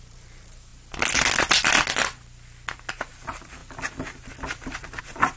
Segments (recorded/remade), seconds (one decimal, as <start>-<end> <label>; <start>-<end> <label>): 0.0-0.7 remade; 0.7-3.1 recorded; 3.1-3.6 remade; 3.6-5.0 recorded; 5.0-5.4 remade